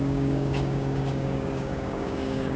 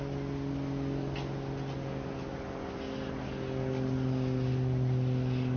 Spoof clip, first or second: first